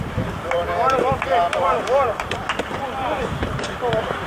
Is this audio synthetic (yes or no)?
yes